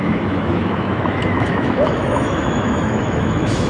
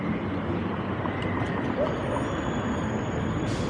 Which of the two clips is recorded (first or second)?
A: second